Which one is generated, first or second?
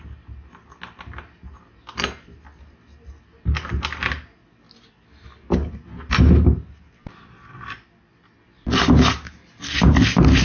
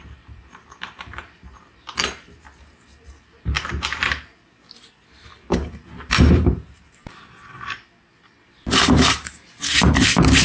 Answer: second